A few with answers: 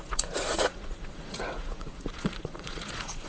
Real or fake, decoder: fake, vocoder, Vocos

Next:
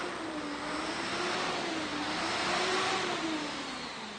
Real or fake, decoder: real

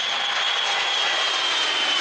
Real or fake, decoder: real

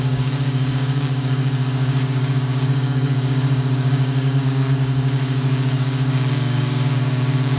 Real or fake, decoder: fake, codec, DAC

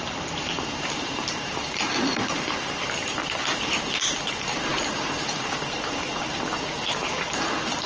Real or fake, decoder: fake, vocoder, BigVGAN v2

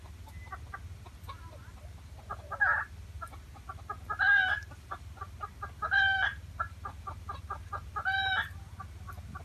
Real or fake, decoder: real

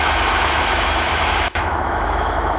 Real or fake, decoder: fake, autoencoder, DAC-VAE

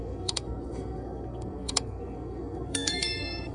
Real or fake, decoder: fake, codec, SNAC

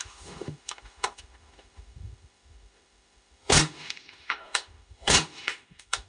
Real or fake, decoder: fake, autoencoder, DAC-VAE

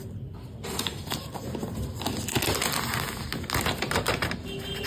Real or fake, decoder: real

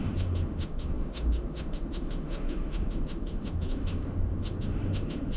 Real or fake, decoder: fake, autoencoder, DAC-VAE